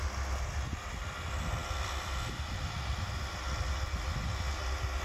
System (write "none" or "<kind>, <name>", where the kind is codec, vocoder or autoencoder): none